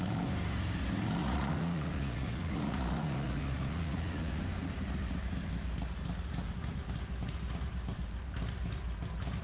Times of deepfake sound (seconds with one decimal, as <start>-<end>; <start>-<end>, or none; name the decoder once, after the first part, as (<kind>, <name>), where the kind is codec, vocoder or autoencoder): 1.2-4.4 (vocoder, Vocos)